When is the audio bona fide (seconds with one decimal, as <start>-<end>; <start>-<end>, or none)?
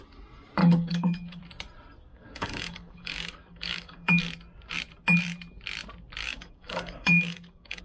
0.0-0.6; 1.4-2.1; 4.2-6.2